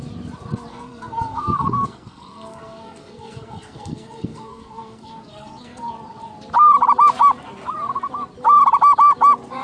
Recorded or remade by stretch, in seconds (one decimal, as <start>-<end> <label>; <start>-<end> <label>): 0.0-0.7 recorded; 0.7-5.9 remade; 5.9-9.6 recorded